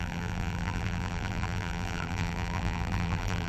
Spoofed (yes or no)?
yes